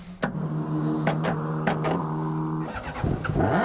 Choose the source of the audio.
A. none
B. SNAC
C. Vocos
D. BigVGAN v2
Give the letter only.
A